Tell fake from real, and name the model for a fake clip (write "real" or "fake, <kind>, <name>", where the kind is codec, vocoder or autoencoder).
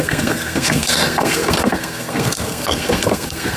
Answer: fake, codec, SNAC